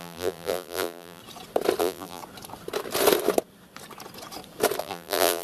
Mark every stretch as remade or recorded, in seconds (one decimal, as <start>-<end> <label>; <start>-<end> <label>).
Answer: 0.0-1.2 remade; 1.2-1.8 recorded; 1.8-2.2 remade; 2.2-4.8 recorded; 4.8-5.4 remade